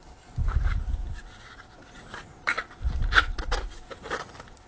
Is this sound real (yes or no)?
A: yes